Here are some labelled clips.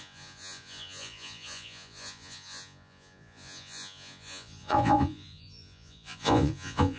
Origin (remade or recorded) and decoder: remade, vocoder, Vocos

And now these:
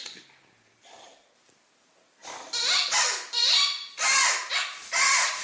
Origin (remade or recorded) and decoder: recorded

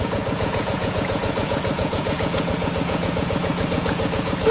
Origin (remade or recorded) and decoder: remade, vocoder, Vocos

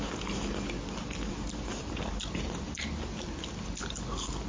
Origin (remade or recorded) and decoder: recorded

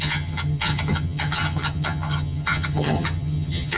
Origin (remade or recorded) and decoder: remade, vocoder, HiFi-GAN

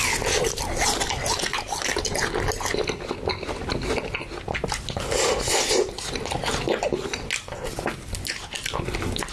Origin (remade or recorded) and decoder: recorded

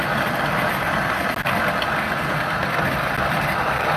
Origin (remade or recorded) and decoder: recorded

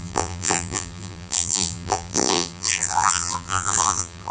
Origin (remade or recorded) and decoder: remade, vocoder, BigVGAN v2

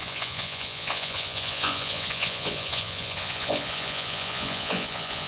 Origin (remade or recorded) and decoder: remade, vocoder, Vocos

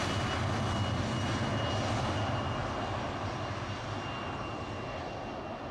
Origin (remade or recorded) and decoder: recorded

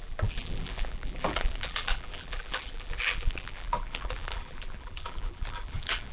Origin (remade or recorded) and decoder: remade, vocoder, BigVGAN v2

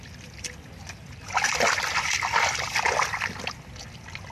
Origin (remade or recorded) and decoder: recorded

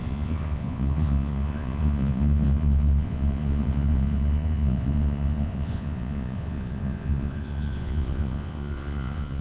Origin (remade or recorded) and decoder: remade, vocoder, Vocos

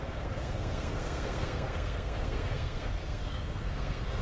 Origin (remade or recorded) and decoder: remade, codec, SNAC